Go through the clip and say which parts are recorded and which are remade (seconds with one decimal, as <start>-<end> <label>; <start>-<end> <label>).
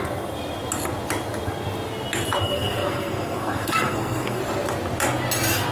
0.0-2.4 recorded; 2.4-4.4 remade; 4.4-5.7 recorded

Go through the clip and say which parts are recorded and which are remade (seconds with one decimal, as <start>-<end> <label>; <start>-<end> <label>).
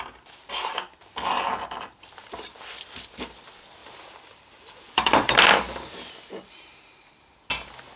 0.0-3.8 recorded; 3.8-5.3 remade; 5.3-8.0 recorded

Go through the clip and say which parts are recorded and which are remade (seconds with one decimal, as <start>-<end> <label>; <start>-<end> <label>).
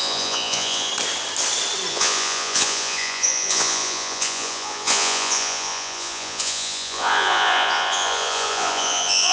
0.0-0.9 remade; 0.9-1.9 recorded; 1.9-9.3 remade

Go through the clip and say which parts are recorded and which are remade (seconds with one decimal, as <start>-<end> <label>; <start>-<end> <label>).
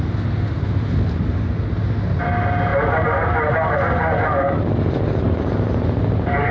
0.0-6.5 recorded